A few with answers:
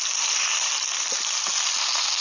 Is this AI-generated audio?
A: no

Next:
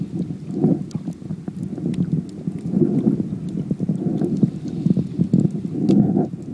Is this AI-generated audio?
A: no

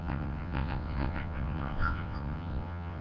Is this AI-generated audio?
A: yes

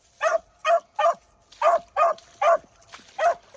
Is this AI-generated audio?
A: no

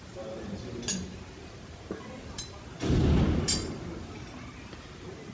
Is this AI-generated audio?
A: no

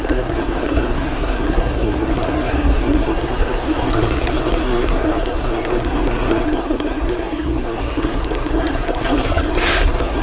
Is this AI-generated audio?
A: yes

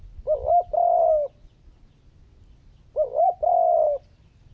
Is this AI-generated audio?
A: no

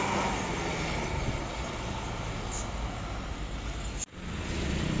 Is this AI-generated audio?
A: no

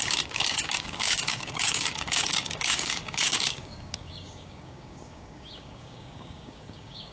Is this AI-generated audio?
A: yes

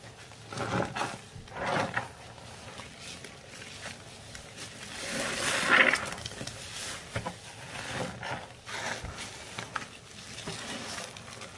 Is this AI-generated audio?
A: no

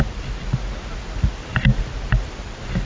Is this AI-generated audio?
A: no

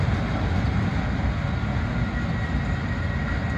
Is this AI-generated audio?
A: no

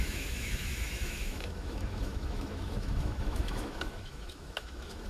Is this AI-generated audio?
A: yes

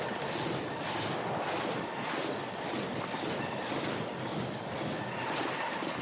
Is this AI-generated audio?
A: no